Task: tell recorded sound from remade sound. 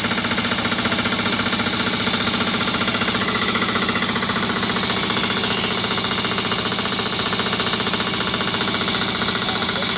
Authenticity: recorded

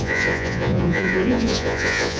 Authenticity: remade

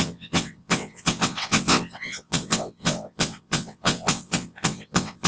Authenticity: remade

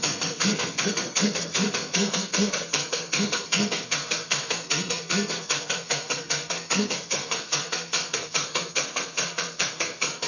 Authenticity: remade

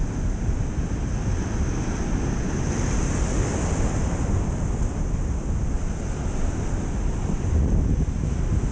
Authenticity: recorded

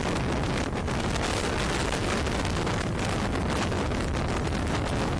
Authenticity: recorded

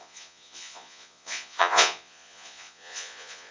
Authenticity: remade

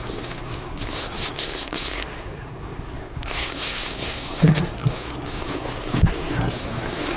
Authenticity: remade